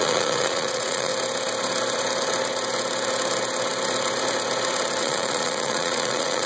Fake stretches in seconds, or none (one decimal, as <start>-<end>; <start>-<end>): 0.0-1.1; 5.0-6.5